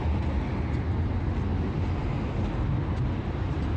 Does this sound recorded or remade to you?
recorded